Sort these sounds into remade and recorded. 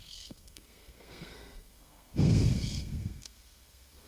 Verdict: remade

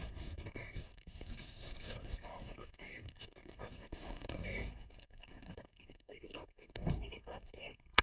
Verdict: remade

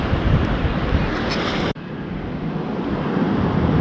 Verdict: recorded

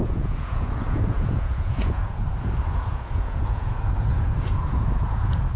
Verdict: remade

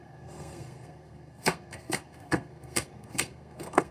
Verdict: remade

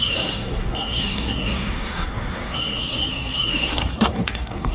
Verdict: remade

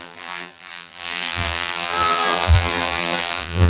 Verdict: remade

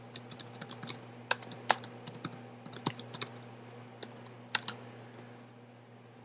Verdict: recorded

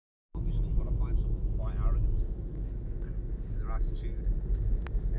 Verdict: recorded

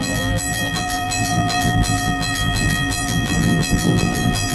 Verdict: remade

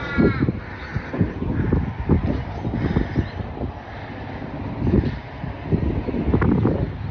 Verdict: recorded